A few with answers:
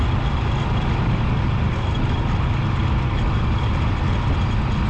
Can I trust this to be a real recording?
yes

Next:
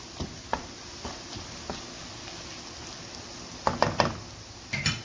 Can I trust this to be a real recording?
yes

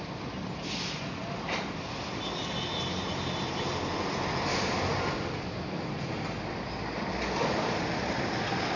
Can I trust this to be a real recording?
yes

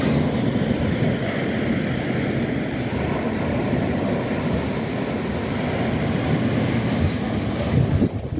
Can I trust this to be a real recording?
yes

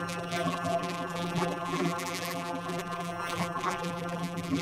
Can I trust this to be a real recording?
no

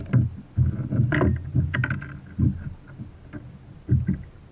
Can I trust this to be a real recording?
yes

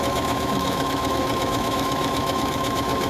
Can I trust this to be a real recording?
no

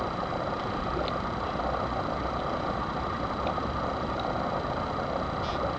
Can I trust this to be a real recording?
yes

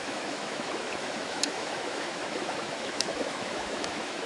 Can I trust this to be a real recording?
no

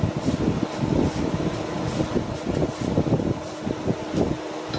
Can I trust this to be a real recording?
yes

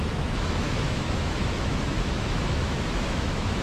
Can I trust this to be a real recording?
no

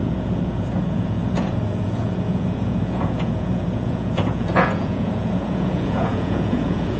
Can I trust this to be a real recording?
no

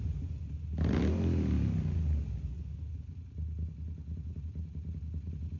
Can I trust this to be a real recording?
yes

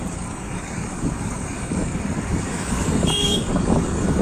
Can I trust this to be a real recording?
no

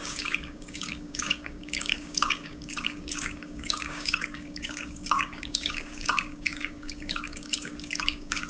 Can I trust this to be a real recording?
no